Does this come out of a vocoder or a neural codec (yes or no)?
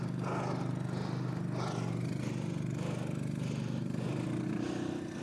no